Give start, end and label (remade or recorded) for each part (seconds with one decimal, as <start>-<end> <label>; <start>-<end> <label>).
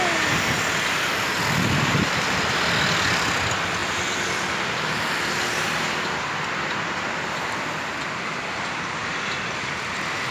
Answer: 0.0-10.3 recorded